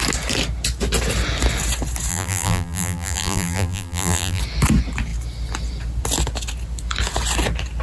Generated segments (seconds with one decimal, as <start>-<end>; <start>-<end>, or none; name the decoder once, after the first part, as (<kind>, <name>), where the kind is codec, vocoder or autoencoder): 2.1-4.4 (vocoder, BigVGAN v2)